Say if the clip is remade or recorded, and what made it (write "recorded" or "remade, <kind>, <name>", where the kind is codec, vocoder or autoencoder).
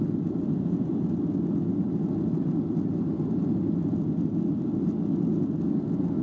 recorded